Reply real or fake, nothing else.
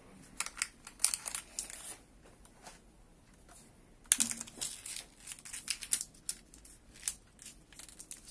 real